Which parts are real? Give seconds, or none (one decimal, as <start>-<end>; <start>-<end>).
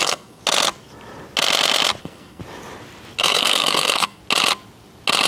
0.4-2.0; 2.4-3.2; 4.2-5.3